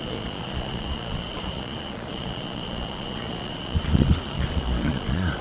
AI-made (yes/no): yes